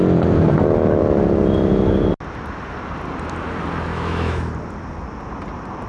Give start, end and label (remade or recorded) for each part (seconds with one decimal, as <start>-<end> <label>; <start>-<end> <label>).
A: 0.0-3.9 recorded; 3.9-4.5 remade; 4.5-5.9 recorded